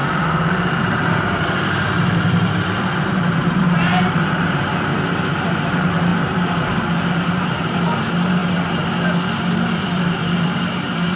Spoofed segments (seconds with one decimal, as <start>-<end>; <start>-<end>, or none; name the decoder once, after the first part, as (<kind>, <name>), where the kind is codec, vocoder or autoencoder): 0.0-8.4 (vocoder, BigVGAN v2); 9.5-11.2